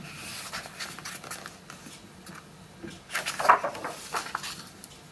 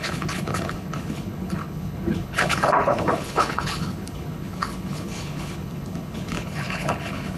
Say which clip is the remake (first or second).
second